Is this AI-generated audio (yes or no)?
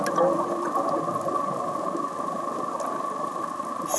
no